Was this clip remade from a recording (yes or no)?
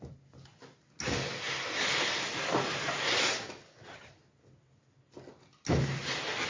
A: no